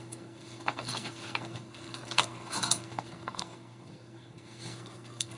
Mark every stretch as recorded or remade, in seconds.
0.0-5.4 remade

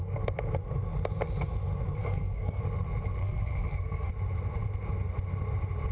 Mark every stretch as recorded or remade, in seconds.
0.0-2.0 recorded; 2.0-2.6 remade; 2.6-3.2 recorded; 3.2-4.1 remade; 4.1-5.9 recorded